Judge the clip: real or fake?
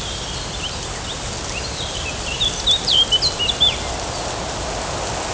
real